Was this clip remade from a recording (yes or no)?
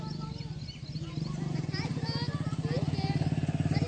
no